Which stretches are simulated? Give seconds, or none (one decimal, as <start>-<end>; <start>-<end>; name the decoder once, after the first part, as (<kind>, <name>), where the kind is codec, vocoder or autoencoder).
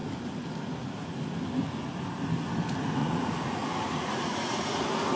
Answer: 3.0-4.8 (vocoder, Vocos)